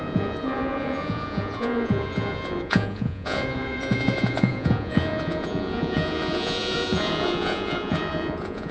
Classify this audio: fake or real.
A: fake